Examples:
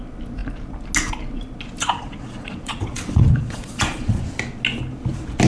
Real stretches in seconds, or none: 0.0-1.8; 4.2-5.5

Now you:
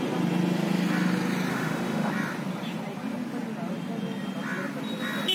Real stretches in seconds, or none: 0.0-1.5; 2.1-5.3

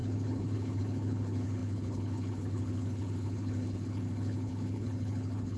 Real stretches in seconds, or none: none

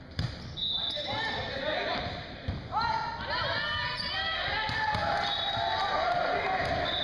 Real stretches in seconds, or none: 0.0-7.0

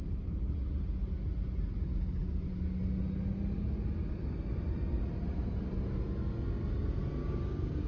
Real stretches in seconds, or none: 0.0-7.2

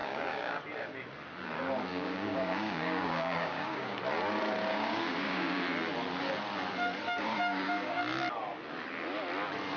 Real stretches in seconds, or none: 0.6-1.9; 4.0-4.7; 5.6-7.3; 8.0-9.8

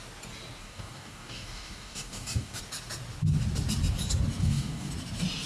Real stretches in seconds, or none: 0.0-0.6; 2.6-4.4; 4.9-5.5

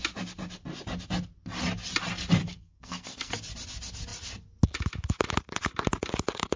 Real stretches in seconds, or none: 0.0-2.4; 3.3-6.6